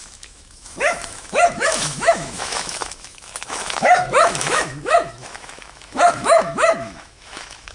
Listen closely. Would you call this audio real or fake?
fake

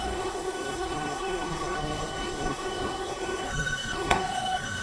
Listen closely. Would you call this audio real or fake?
fake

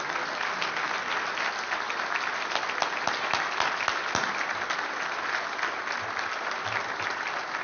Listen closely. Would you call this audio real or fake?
real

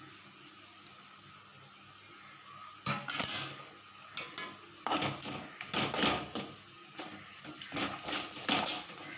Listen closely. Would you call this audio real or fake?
real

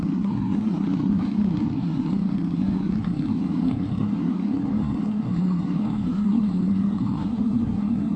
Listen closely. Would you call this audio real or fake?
fake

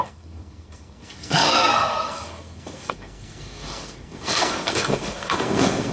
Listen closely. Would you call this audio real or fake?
fake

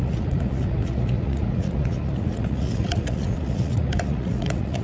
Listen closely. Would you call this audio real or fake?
fake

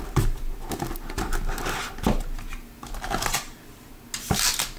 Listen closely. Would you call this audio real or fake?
real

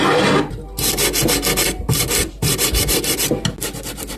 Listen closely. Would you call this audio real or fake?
real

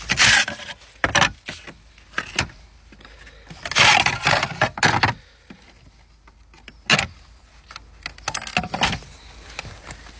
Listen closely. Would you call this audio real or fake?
real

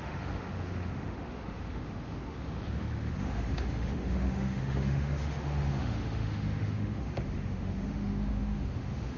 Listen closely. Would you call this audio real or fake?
fake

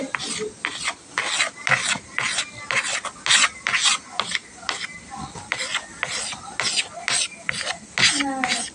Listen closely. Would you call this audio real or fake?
real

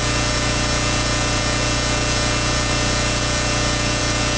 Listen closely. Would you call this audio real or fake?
fake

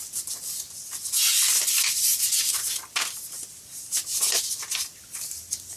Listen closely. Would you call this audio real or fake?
real